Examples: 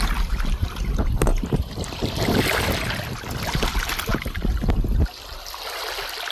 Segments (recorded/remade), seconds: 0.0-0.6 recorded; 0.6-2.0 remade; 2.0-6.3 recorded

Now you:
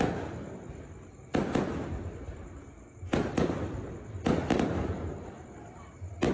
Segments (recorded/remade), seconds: 0.0-6.3 recorded

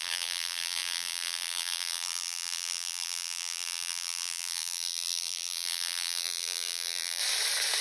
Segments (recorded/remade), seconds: 0.0-7.2 remade; 7.2-7.8 recorded

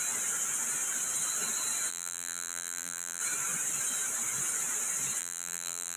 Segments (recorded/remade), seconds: 0.0-1.9 recorded; 1.9-3.2 remade; 3.2-5.2 recorded; 5.2-6.0 remade

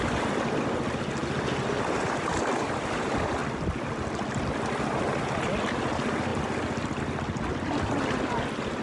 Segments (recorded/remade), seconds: 0.0-1.2 remade; 1.2-2.2 recorded; 2.2-3.4 remade; 3.4-5.6 recorded; 5.6-8.8 remade